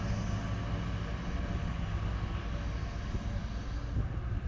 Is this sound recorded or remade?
recorded